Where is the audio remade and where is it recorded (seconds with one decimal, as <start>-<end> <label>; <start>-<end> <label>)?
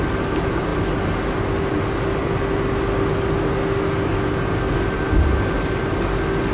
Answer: 0.0-6.5 recorded